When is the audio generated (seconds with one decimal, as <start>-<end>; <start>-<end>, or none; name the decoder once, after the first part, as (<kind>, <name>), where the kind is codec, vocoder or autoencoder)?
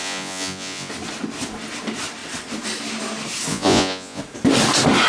0.0-0.9 (vocoder, Vocos); 3.5-4.2